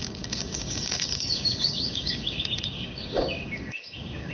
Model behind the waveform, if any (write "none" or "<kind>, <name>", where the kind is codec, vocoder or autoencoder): codec, DAC